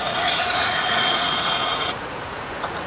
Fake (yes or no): yes